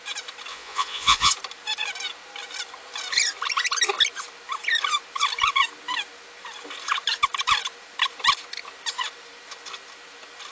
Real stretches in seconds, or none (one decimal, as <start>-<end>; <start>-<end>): 0.0-0.5; 1.3-10.5